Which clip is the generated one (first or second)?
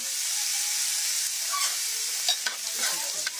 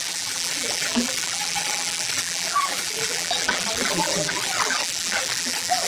second